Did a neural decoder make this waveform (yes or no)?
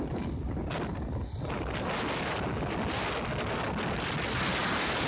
no